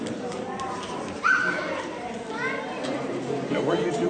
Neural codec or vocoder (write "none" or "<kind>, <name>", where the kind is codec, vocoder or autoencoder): vocoder, BigVGAN v2